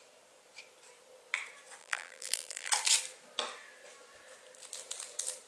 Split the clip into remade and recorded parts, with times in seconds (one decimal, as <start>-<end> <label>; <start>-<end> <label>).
0.0-1.8 recorded; 1.8-2.7 remade; 2.7-5.5 recorded